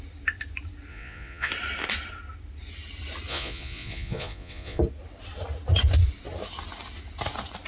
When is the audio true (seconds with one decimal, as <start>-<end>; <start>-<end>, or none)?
0.0-0.9; 1.5-3.3; 4.8-7.7